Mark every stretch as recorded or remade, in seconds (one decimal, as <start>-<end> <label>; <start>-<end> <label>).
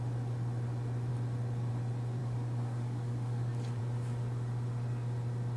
0.0-2.2 recorded; 2.2-3.8 remade; 3.8-5.6 recorded